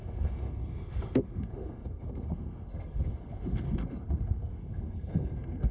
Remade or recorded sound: remade